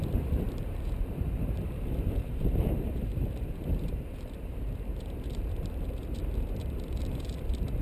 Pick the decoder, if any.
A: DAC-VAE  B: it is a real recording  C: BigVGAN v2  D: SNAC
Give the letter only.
C